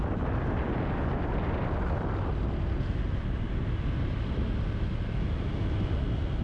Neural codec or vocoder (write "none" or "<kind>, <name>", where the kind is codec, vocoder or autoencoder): none